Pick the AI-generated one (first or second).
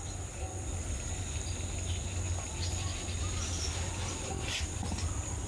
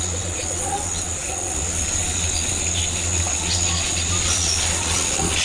second